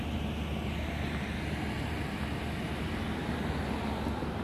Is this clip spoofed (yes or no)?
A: no